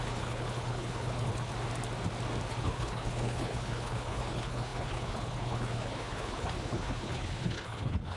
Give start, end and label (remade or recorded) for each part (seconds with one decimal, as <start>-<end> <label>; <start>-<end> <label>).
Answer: 0.0-1.5 remade; 1.5-2.5 recorded; 2.5-8.2 remade